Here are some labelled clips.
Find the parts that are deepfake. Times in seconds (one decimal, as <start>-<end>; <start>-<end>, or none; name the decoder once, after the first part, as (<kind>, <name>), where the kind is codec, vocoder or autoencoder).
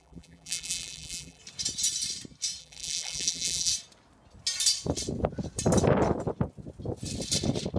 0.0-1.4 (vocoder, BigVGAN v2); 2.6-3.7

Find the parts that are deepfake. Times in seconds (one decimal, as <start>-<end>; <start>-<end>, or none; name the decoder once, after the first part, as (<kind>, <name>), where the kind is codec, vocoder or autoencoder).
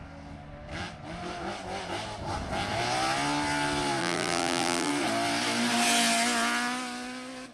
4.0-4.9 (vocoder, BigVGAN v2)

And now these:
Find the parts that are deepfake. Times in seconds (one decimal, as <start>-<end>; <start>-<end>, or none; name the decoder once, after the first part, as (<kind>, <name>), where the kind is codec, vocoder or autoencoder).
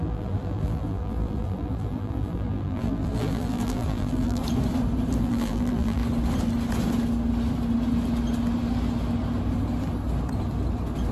0.0-4.4 (vocoder, BigVGAN v2); 5.2-6.0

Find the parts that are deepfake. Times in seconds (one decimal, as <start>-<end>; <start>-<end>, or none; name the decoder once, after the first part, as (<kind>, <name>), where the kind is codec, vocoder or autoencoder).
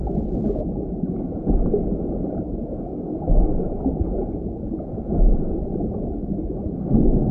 none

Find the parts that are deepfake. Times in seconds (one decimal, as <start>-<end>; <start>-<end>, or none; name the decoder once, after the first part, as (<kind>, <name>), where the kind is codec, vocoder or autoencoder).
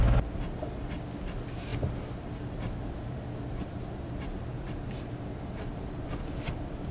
none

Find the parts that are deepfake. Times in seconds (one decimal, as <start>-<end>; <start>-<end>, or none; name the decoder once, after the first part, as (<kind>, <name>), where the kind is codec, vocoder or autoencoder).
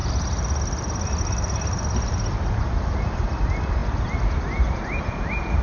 none